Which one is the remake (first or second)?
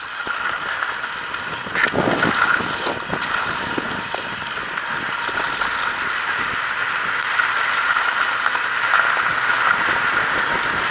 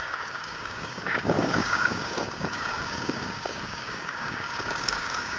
second